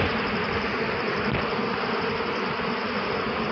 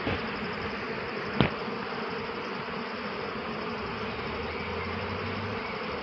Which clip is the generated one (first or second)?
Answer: second